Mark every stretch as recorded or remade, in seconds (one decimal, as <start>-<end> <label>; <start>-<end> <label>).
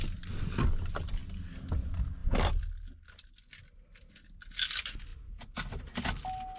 0.0-2.2 recorded; 2.2-3.1 remade; 3.1-5.1 recorded; 5.1-5.8 remade; 5.8-6.6 recorded